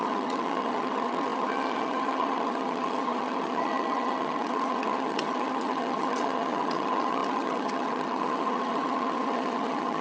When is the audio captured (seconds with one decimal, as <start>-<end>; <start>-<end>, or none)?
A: none